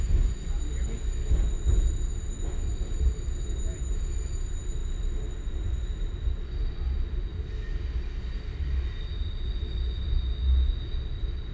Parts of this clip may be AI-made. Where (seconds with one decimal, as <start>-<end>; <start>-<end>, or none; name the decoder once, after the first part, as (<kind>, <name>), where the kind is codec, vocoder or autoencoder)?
none